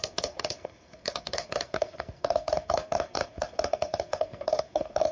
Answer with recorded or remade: remade